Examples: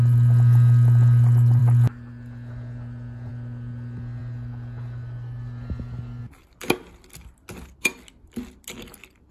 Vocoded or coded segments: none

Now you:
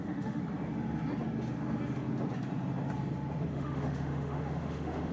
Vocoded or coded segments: 0.0-0.4 (autoencoder, DAC-VAE); 3.5-5.1

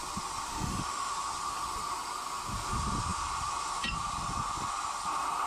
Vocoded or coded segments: 0.5-1.1 (autoencoder, DAC-VAE)

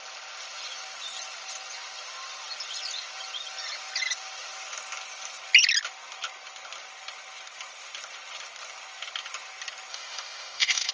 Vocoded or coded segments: 9.9-10.9 (autoencoder, DAC-VAE)

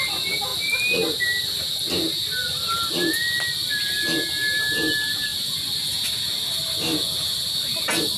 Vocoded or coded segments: none

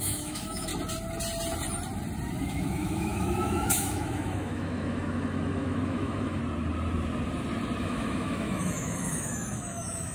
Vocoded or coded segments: 0.0-0.7 (autoencoder, DAC-VAE); 2.4-6.4; 7.8-10.1